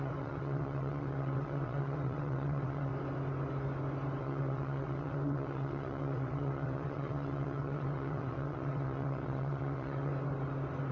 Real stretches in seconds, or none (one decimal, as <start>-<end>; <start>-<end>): 2.9-4.2; 10.1-10.9